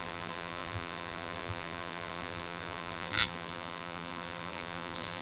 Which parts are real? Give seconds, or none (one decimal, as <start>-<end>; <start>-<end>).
none